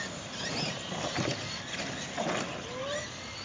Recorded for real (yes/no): yes